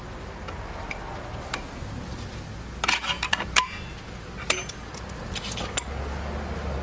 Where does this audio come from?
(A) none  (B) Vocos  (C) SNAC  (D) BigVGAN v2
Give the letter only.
A